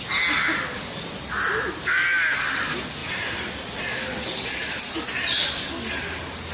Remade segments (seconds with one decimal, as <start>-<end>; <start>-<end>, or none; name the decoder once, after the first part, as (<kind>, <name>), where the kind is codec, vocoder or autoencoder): none